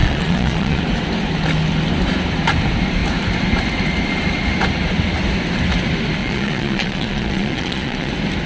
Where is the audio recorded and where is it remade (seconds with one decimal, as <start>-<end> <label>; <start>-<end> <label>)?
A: 0.0-0.8 remade; 0.8-6.2 recorded; 6.2-8.1 remade; 8.1-8.5 recorded